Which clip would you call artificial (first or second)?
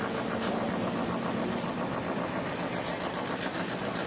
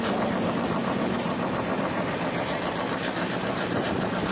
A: second